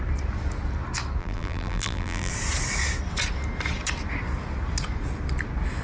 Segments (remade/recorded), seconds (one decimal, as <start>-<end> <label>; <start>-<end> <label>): 0.0-1.2 recorded; 1.2-2.3 remade; 2.3-5.8 recorded